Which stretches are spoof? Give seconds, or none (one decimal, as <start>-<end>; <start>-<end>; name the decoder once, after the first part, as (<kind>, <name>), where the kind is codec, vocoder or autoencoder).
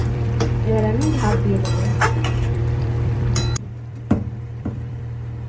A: 0.0-0.7 (vocoder, BigVGAN v2); 1.9-5.0